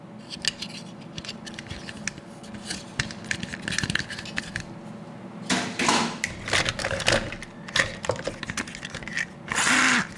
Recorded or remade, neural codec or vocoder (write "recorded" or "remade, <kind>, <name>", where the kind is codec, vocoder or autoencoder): recorded